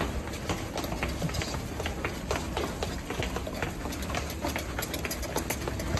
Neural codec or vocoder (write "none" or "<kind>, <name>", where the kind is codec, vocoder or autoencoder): none